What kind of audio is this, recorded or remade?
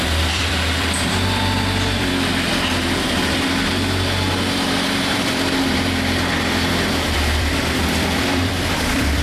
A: remade